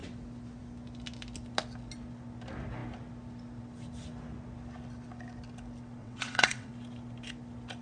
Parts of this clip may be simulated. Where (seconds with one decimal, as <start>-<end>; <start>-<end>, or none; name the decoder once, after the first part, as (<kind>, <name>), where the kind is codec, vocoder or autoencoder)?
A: 6.0-6.7 (vocoder, WaveNeXt)